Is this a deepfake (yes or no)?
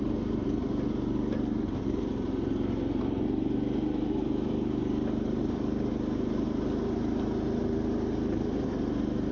no